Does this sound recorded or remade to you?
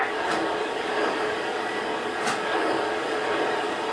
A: remade